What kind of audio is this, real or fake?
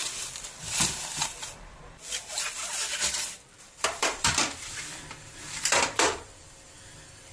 fake